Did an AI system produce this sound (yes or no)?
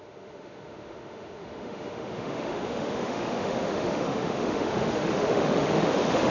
yes